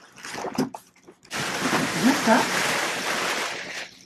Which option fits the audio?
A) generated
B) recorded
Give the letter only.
A